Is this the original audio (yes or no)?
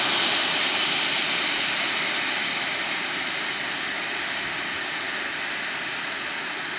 yes